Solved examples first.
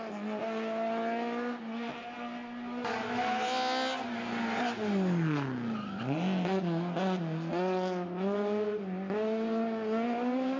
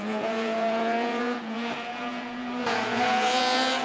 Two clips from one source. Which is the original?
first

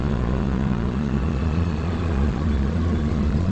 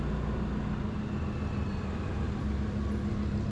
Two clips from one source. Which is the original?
second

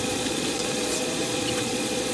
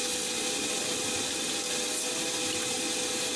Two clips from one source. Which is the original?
second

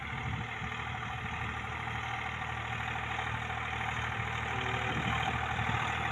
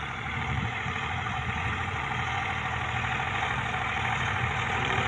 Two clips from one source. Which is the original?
first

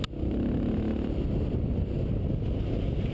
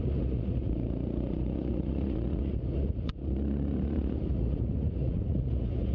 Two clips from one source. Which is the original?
first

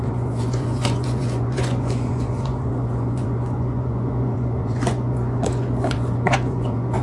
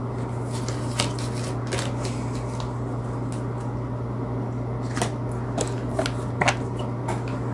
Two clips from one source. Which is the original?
second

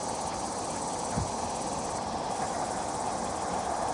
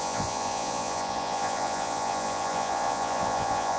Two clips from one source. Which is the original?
first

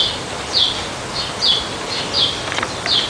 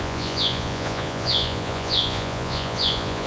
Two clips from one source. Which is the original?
first